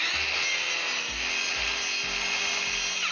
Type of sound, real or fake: real